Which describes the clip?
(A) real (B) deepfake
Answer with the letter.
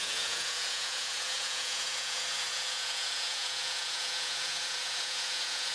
B